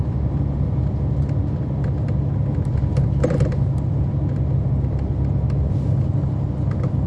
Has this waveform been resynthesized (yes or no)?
no